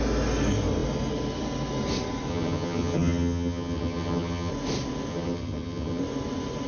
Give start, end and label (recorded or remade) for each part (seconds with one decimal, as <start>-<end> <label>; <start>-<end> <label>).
0.0-2.3 recorded; 2.3-4.5 remade; 4.5-5.1 recorded; 5.1-6.0 remade; 6.0-6.7 recorded